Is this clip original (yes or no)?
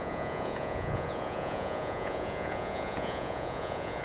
no